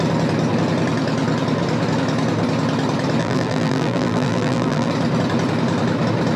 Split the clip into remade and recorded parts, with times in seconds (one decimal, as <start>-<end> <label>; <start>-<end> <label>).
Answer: 0.0-3.2 recorded; 3.2-4.9 remade; 4.9-6.4 recorded